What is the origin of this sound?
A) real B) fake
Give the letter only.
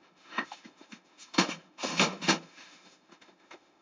B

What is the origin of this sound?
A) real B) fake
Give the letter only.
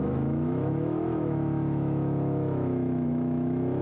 B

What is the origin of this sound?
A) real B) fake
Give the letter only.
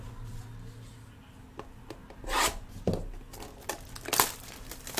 A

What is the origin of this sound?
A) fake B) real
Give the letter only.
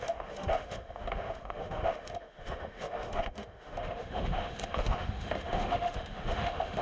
A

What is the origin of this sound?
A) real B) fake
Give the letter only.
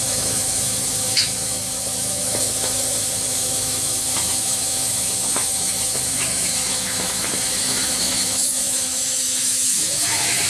B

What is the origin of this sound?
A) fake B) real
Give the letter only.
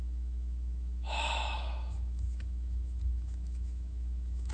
A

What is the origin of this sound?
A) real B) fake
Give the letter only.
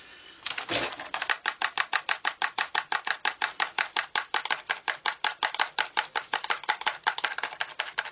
A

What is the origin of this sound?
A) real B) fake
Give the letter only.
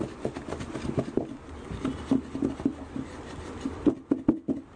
A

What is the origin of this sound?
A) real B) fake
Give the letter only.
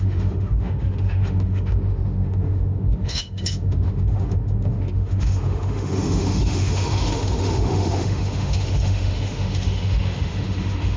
B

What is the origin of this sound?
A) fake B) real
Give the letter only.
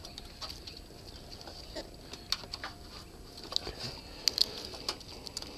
B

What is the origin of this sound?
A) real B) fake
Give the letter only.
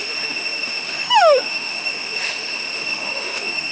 B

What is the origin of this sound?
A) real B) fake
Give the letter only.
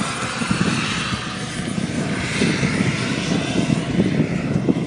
A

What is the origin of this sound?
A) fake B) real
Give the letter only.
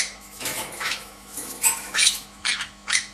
A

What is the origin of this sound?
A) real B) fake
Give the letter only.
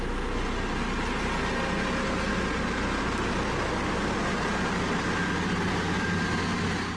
A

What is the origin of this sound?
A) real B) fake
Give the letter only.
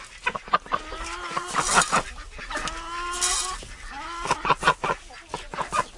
A